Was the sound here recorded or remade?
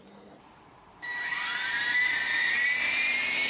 remade